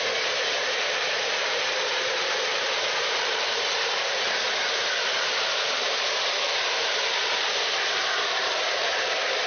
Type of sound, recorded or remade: remade